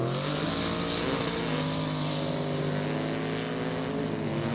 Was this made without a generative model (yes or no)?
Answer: yes